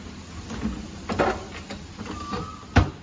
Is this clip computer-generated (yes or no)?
no